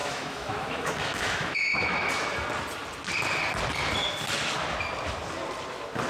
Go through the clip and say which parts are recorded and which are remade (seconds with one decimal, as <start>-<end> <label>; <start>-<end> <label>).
0.0-2.1 remade; 2.1-6.1 recorded